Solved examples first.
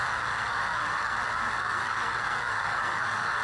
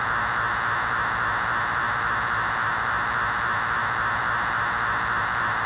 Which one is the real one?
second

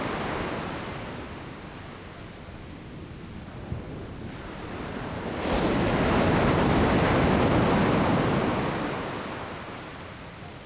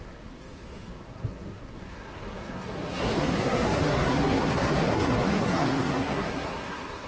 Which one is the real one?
first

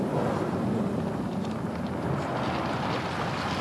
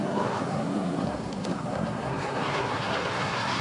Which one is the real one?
first